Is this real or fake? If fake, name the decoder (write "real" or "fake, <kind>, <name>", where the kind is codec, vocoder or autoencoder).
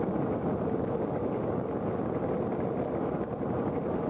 real